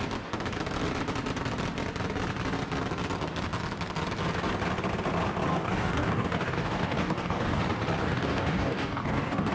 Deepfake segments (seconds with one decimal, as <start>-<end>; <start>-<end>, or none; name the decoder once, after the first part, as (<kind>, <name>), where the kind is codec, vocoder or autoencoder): 5.5-7.6 (codec, DAC); 8.0-9.5